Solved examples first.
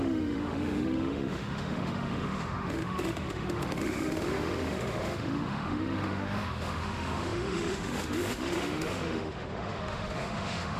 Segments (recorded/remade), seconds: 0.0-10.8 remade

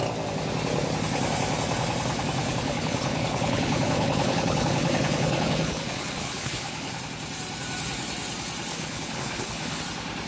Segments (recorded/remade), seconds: 0.0-2.4 recorded; 2.4-7.0 remade; 7.0-8.7 recorded; 8.7-9.8 remade; 9.8-10.3 recorded

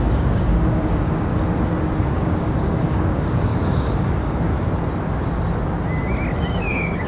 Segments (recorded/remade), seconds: 0.0-1.3 remade; 1.3-2.1 recorded; 2.1-3.5 remade; 3.5-4.0 recorded; 4.0-4.5 remade; 4.5-6.6 recorded; 6.6-7.1 remade